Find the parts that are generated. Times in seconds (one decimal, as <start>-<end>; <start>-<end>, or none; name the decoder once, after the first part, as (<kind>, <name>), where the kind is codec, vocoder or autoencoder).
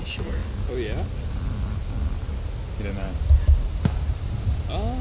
none